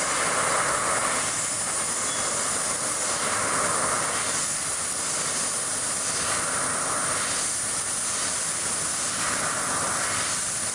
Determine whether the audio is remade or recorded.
recorded